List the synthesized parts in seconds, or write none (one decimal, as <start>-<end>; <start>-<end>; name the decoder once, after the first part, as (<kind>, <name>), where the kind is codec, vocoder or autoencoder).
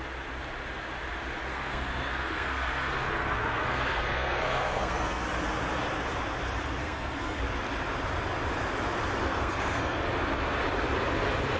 1.5-5.2 (codec, SNAC); 6.8-7.4; 9.2-10.0